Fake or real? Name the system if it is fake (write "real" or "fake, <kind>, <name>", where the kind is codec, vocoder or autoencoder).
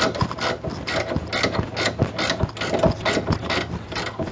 real